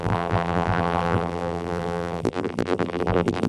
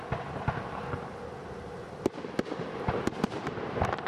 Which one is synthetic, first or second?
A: first